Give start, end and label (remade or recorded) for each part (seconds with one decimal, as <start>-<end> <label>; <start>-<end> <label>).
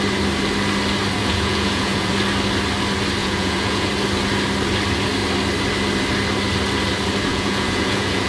0.0-1.2 recorded; 1.2-2.1 remade; 2.1-3.2 recorded; 3.2-3.9 remade; 3.9-7.3 recorded; 7.3-8.3 remade